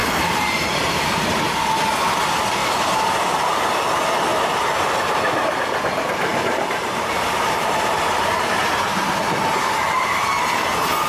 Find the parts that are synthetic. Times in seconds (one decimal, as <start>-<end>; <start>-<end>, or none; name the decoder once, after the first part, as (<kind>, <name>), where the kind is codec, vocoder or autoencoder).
0.0-1.4 (vocoder, BigVGAN v2); 2.6-3.6; 4.3-5.6; 6.3-8.6